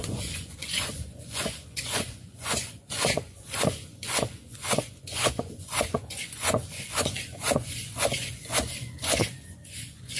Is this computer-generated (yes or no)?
yes